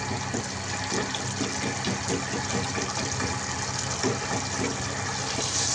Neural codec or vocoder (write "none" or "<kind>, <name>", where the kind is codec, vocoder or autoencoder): none